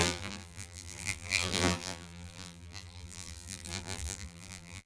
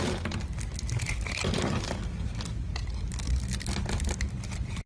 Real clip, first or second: second